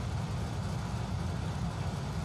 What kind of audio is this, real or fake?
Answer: real